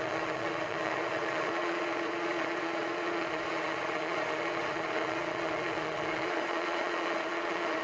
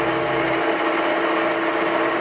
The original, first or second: second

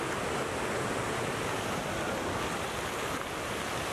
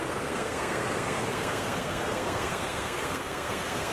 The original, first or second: first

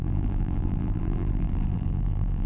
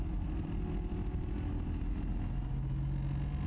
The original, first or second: second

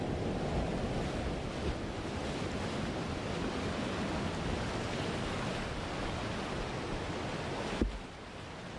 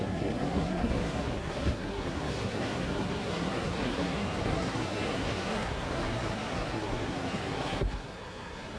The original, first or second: first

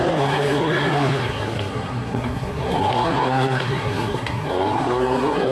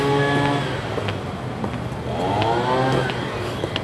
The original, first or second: second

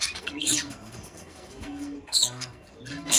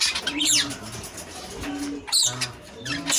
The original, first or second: second